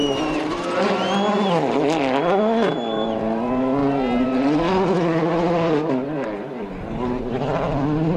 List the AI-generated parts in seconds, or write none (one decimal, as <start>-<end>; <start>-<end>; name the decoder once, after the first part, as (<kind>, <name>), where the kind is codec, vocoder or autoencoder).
0.0-0.8 (vocoder, BigVGAN v2)